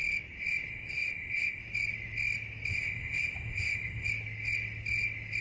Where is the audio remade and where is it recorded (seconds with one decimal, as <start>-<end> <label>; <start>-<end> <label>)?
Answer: 0.0-0.7 recorded; 0.7-1.6 remade; 1.6-2.7 recorded; 2.7-4.1 remade; 4.1-5.4 recorded